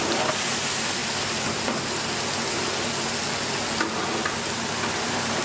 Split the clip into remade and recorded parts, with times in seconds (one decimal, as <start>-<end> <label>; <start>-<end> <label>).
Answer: 0.0-5.4 recorded